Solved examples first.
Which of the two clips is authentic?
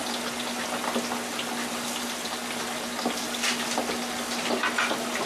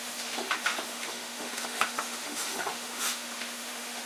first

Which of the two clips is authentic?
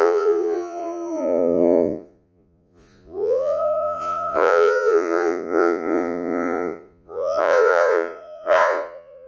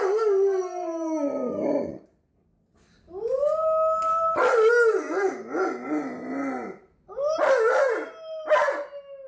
second